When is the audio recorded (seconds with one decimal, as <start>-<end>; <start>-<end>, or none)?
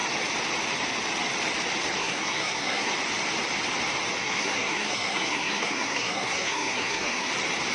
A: 0.0-2.0; 2.9-4.2; 7.3-7.7